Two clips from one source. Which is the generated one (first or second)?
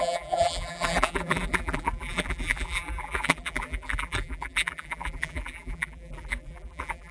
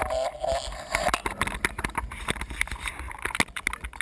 first